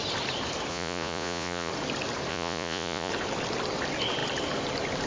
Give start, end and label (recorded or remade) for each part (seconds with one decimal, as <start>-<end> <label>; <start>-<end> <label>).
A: 0.0-0.7 recorded; 0.7-1.7 remade; 1.7-2.3 recorded; 2.3-3.1 remade; 3.1-5.1 recorded